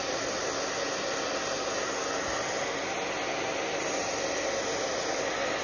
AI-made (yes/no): no